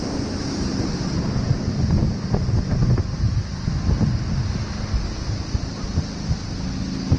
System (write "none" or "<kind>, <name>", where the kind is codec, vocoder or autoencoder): none